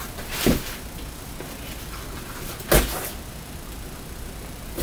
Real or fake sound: real